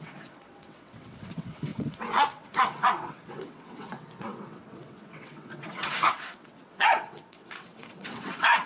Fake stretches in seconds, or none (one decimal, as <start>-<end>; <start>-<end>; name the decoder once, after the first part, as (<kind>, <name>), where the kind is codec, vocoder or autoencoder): 0.0-8.7 (vocoder, WaveNeXt)

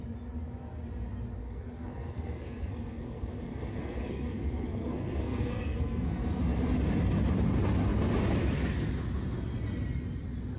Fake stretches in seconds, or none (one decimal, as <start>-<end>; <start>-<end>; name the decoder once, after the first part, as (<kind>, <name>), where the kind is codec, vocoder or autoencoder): 1.4-6.4 (codec, SNAC)